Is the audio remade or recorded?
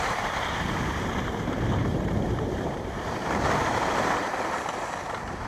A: remade